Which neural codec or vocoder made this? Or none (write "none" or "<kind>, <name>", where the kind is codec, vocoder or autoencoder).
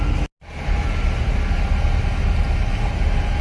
none